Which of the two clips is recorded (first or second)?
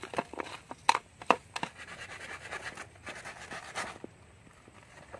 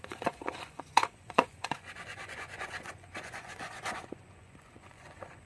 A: first